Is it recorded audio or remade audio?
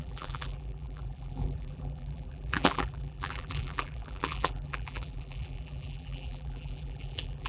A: remade